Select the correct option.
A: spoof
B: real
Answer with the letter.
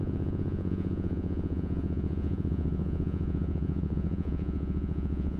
A